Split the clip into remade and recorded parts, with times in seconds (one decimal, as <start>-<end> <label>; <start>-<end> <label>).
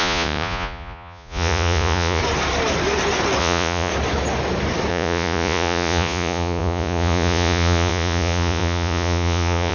0.0-2.2 remade; 2.2-3.4 recorded; 3.4-3.9 remade; 3.9-4.9 recorded; 4.9-9.7 remade